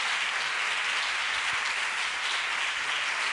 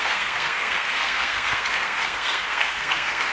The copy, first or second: second